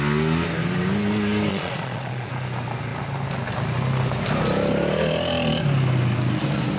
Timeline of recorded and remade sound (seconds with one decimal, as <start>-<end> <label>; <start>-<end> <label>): 0.0-1.5 recorded; 1.5-2.3 remade; 2.3-6.8 recorded